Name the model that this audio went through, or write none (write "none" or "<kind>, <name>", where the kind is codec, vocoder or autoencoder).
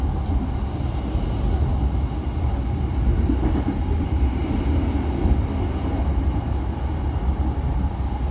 none